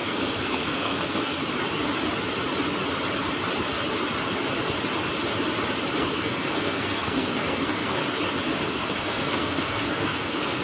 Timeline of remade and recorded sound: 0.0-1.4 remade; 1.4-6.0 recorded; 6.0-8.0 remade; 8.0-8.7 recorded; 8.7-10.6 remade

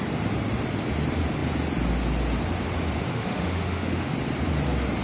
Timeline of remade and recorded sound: 0.0-3.1 recorded; 3.1-4.1 remade; 4.1-5.0 recorded

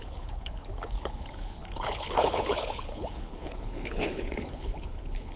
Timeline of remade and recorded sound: 0.0-5.4 remade

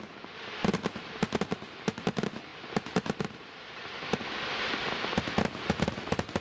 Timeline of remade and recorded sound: 0.0-2.5 recorded; 2.5-4.2 remade; 4.2-6.4 recorded